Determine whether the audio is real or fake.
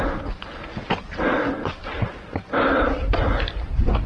real